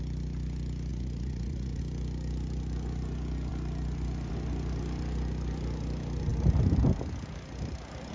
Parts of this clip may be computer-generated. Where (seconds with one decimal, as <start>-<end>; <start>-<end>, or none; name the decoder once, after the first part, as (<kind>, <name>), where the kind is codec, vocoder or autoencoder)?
0.9-1.8 (vocoder, Vocos)